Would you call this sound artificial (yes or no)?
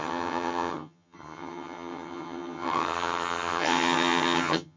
yes